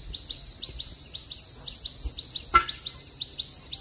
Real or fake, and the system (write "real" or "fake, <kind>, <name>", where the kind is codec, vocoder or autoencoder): real